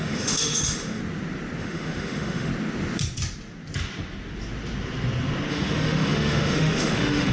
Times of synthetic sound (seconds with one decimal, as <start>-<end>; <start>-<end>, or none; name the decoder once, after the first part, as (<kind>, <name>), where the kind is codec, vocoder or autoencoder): 0.0-1.0 (autoencoder, DAC-VAE); 1.6-2.5; 5.5-7.3